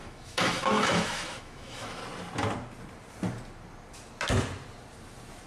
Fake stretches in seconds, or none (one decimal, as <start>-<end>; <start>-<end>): 0.0-2.0